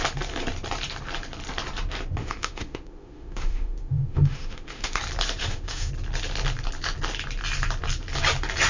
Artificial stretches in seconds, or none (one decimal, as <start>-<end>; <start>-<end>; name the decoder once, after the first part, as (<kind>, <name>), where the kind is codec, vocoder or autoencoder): 2.2-5.0 (autoencoder, DAC-VAE); 5.4-5.9